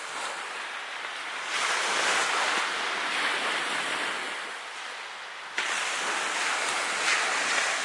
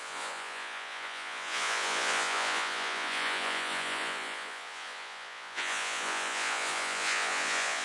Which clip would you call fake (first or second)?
second